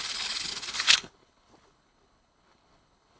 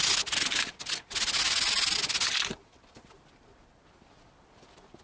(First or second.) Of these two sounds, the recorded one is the second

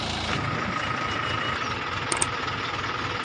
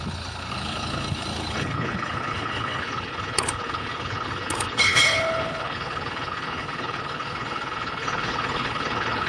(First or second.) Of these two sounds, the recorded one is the first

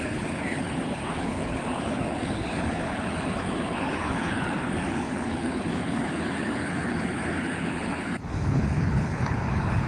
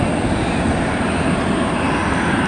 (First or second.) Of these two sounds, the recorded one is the second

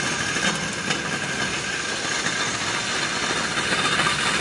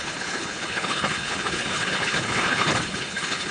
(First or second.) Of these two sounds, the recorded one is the first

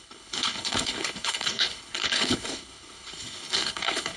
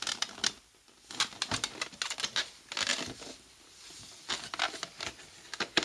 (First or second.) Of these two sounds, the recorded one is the second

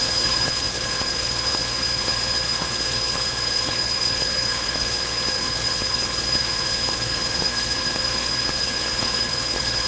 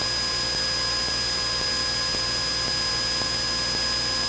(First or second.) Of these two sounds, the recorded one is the second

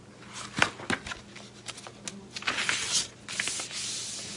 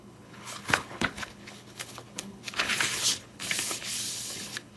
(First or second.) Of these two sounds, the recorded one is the first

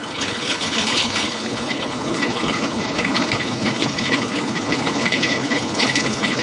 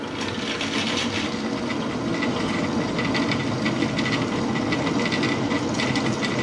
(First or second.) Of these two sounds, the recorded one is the second